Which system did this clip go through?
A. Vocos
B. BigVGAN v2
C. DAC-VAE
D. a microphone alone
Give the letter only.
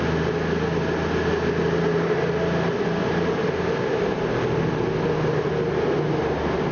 D